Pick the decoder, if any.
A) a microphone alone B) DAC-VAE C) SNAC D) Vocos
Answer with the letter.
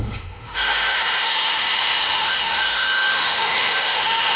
B